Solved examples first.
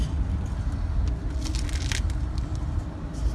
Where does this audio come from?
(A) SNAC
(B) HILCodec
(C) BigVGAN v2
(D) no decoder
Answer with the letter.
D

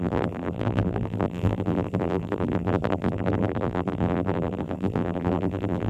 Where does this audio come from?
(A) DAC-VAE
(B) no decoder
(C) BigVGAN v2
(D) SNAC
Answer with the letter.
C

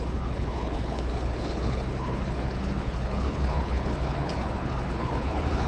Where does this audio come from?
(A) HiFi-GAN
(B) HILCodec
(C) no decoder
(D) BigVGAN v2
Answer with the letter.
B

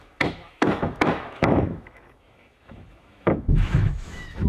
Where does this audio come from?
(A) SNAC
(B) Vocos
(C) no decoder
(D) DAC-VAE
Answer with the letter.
D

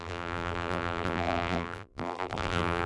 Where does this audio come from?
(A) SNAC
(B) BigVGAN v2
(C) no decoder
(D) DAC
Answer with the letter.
B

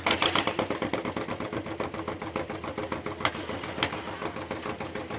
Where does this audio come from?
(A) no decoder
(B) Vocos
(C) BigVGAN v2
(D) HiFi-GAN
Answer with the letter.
A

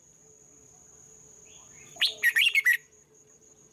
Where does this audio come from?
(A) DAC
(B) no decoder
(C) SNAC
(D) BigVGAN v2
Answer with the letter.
D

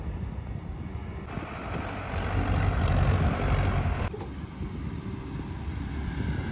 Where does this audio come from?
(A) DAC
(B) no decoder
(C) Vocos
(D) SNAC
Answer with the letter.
B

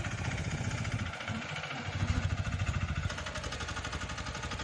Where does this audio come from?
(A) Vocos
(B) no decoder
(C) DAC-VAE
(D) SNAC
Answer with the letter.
A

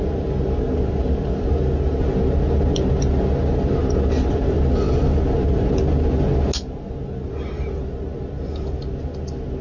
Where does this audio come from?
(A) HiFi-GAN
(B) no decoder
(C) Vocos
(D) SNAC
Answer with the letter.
B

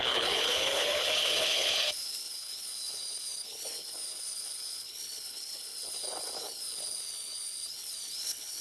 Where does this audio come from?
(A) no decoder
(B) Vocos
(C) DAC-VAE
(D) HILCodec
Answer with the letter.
D